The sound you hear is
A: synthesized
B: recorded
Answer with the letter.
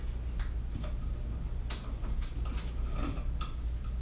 B